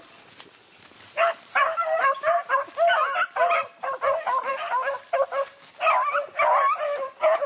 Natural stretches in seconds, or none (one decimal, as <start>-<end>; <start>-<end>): 0.0-7.5